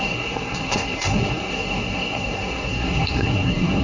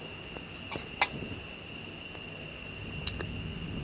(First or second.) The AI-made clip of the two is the first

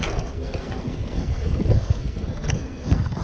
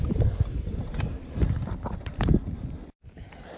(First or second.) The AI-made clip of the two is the first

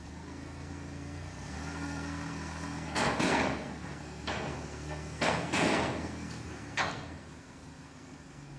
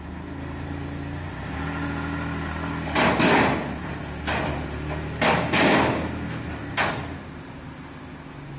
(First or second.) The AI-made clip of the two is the first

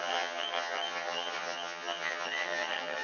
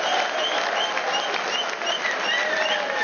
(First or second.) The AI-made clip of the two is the first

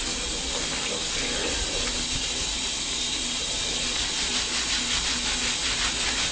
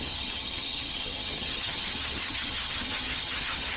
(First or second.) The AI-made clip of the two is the second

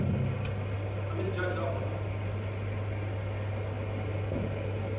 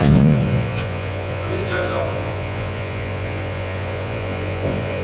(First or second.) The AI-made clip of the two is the second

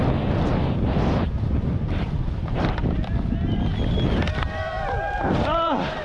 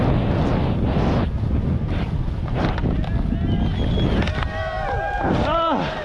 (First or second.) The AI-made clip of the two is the first